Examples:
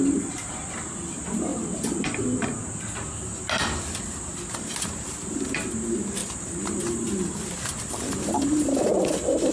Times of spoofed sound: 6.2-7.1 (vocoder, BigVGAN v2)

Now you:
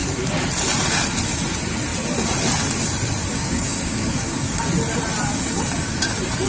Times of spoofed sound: 3.3-4.6 (codec, DAC)

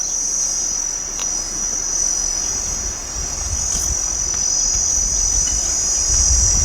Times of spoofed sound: none

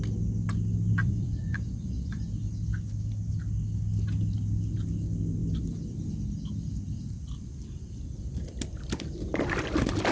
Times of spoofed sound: 1.0-2.2 (vocoder, Vocos)